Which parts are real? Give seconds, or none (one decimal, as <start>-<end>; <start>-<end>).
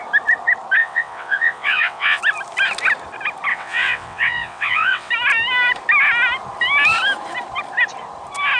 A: 0.0-0.8; 2.2-3.5; 5.1-8.6